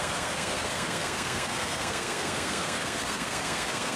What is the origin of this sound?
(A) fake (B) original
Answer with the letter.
A